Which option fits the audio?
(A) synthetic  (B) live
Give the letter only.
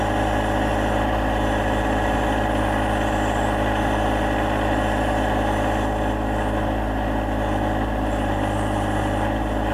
B